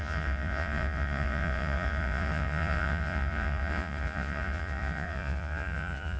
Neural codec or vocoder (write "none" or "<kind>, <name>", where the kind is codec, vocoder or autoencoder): vocoder, Vocos